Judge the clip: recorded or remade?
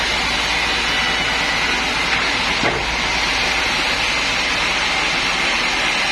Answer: recorded